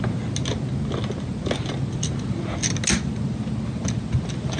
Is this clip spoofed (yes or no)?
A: no